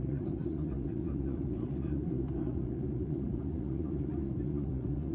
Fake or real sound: fake